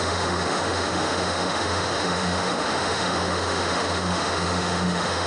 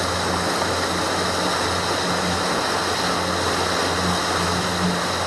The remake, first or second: first